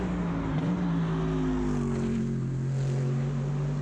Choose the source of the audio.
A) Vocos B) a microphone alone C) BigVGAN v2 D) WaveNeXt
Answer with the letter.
B